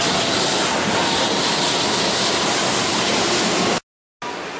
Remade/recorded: recorded